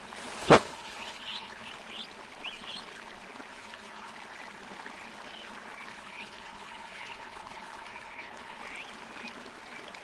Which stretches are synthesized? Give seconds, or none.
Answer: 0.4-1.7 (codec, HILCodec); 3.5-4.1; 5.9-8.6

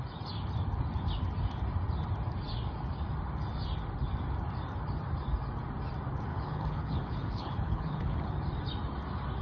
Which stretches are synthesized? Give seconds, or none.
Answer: 6.3-8.3 (codec, HILCodec)

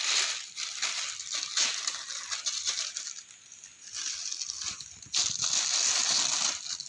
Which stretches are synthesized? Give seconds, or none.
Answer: none